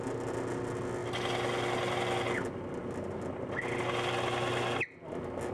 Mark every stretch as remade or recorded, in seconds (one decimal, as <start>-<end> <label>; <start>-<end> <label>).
0.0-5.5 recorded